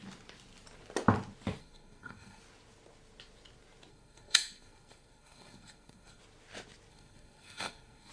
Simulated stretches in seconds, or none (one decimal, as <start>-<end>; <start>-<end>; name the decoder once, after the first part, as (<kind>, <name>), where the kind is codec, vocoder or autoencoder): 1.6-2.4 (codec, SNAC); 3.9-6.2; 6.9-8.1

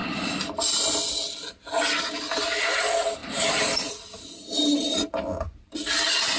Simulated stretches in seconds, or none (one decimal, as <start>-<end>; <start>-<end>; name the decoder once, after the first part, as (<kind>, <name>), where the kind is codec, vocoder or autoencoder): none

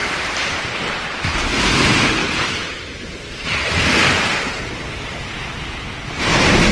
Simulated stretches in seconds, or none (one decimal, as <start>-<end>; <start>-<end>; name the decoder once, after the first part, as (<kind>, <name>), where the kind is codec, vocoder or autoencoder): 0.0-1.6 (vocoder, BigVGAN v2); 2.2-6.2

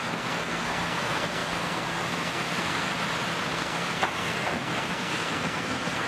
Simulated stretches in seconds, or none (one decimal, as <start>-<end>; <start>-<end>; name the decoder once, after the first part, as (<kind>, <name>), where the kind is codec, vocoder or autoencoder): 0.0-2.9 (codec, SNAC); 3.5-6.1

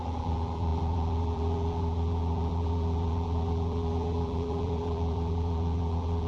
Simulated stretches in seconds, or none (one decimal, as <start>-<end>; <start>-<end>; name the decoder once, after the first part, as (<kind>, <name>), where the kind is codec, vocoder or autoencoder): 0.0-6.3 (vocoder, BigVGAN v2)

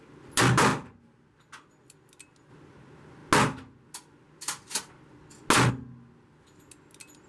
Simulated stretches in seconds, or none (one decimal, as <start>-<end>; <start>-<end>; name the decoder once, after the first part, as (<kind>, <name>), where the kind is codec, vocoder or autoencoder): none